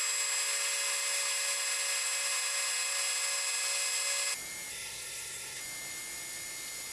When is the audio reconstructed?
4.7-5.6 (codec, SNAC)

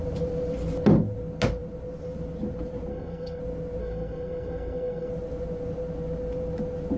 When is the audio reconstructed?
2.9-3.4 (codec, SNAC); 3.8-5.1